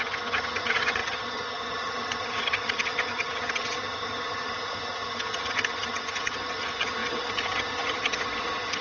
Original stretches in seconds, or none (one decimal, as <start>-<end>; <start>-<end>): none